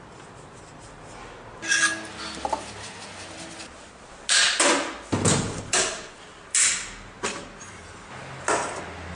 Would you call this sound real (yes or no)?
yes